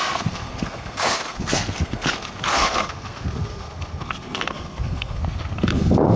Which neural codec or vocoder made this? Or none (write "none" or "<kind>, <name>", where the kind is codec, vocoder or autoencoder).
codec, SNAC